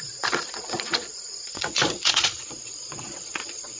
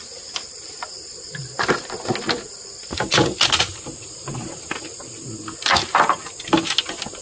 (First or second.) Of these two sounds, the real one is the second